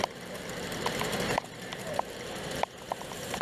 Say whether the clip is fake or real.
fake